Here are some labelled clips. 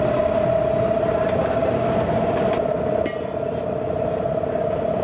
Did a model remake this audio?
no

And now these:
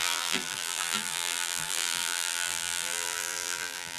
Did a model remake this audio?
yes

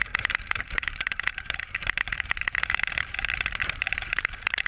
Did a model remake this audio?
yes